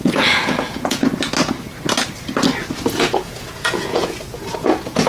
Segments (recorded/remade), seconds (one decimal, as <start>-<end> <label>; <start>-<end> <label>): 0.0-1.1 remade; 1.1-2.9 recorded; 2.9-5.1 remade